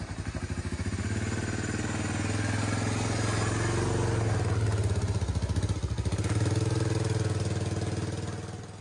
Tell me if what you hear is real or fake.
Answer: real